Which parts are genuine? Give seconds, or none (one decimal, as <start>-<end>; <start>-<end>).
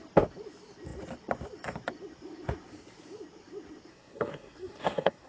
0.0-3.9